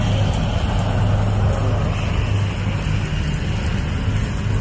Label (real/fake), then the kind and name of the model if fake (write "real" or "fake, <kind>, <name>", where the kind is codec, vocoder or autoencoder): real